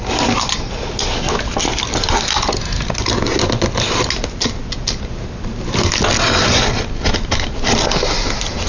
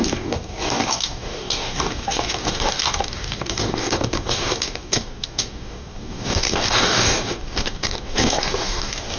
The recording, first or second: first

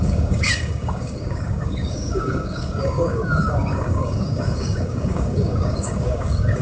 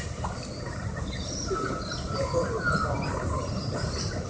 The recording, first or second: second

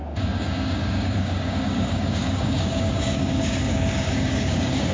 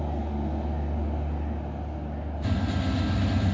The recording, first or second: second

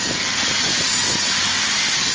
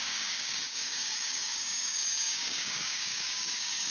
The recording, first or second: first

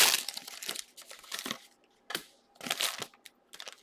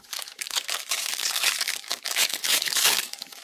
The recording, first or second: first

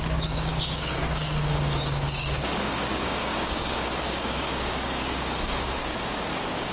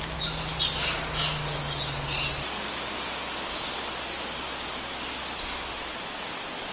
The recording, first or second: second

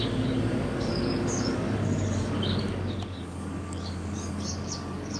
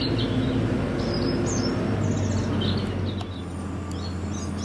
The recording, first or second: second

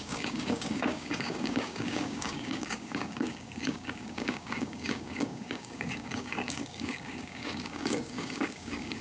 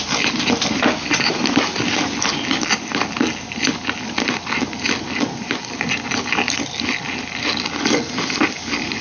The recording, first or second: second